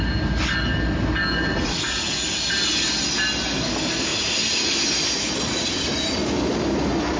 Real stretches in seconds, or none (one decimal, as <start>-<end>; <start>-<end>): 0.0-1.5; 2.2-4.1; 4.7-7.2